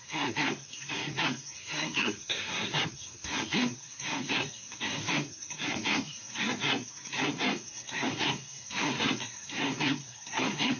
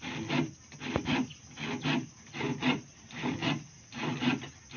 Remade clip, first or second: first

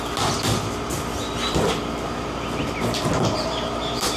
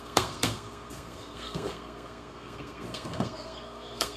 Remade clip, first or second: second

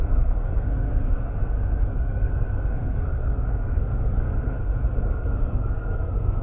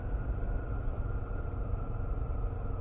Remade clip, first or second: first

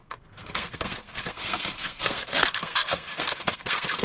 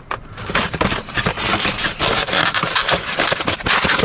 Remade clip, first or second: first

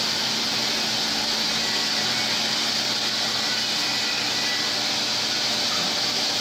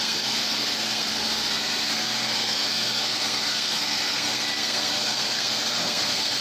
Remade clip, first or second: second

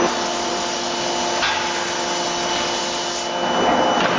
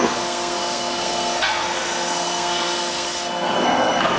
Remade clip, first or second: second